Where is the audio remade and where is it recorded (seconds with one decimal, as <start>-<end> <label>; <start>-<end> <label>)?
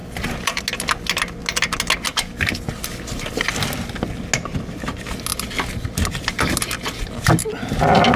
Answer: 0.0-0.6 remade; 0.6-8.2 recorded